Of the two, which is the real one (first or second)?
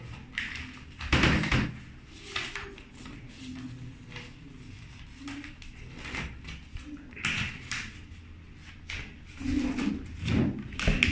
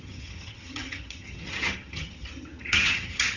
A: first